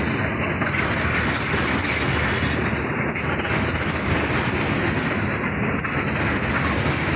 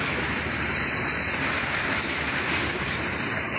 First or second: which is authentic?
first